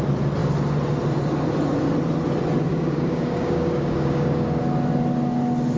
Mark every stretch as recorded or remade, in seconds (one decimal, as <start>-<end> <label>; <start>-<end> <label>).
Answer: 0.0-2.7 recorded; 2.7-4.6 remade; 4.6-5.8 recorded